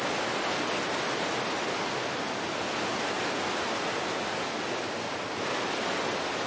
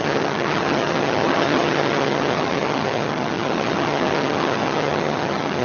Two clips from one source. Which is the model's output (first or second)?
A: second